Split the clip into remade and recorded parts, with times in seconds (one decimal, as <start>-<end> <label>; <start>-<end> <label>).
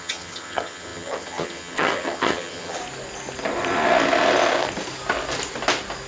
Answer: 0.0-2.8 remade; 2.8-6.1 recorded